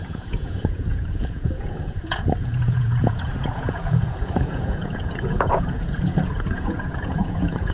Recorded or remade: remade